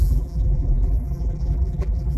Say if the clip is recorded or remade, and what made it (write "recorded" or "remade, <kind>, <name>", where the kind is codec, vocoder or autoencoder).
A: remade, vocoder, BigVGAN v2